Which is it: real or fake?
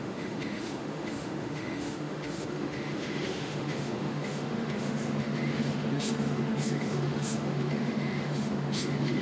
fake